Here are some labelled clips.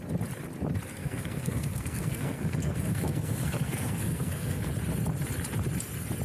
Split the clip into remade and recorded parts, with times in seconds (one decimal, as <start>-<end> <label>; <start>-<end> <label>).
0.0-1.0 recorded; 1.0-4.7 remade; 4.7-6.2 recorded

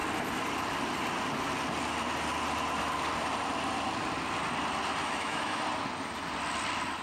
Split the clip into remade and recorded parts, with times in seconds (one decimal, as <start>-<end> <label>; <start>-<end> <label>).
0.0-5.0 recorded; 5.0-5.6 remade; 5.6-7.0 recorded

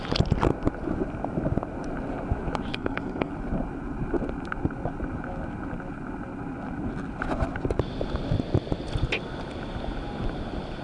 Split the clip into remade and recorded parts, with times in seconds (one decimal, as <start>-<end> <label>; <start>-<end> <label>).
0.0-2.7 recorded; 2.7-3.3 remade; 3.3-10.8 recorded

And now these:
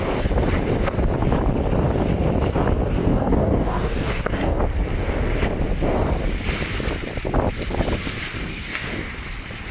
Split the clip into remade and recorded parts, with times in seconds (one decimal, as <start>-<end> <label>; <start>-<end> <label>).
0.0-3.0 recorded; 3.0-4.6 remade; 4.6-8.5 recorded; 8.5-9.1 remade; 9.1-9.7 recorded

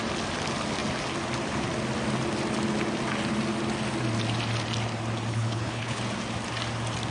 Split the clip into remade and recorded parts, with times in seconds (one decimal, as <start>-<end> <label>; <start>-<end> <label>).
0.0-5.3 recorded; 5.3-6.0 remade; 6.0-7.1 recorded